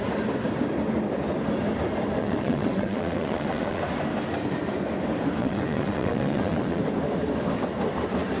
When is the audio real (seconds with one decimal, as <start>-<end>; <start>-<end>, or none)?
0.0-2.2; 3.8-5.4; 6.8-8.4